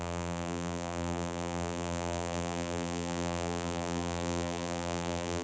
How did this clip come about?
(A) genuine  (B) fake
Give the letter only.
B